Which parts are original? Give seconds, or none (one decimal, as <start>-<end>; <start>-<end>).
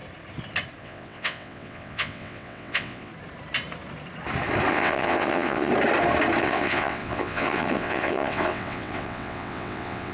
0.0-0.8; 3.1-4.7; 5.7-6.4